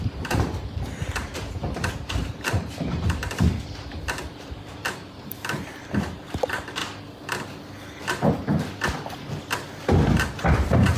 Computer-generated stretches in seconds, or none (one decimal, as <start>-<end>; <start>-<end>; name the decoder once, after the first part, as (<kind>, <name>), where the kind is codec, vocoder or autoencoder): 0.0-3.2 (vocoder, BigVGAN v2); 4.0-6.8; 10.5-11.0